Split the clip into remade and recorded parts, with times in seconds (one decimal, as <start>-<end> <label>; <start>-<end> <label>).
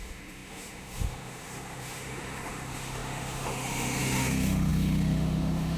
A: 0.0-5.8 remade